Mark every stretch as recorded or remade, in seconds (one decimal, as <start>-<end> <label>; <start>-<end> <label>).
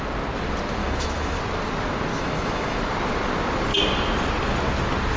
0.0-0.8 recorded; 0.8-1.4 remade; 1.4-2.1 recorded; 2.1-2.8 remade; 2.8-5.2 recorded